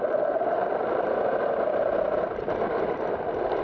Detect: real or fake real